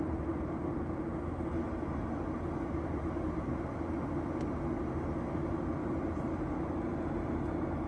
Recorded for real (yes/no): yes